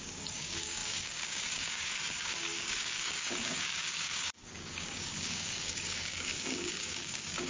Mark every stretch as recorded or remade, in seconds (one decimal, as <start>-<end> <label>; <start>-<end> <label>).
0.0-7.5 remade